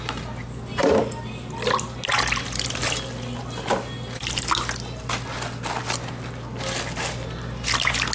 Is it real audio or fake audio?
real